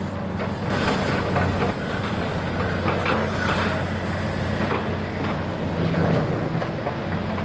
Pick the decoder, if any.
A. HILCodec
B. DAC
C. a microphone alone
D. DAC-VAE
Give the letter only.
C